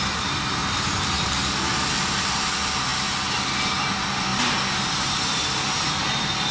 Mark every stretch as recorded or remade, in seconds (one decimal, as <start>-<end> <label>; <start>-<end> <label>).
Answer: 0.0-6.5 recorded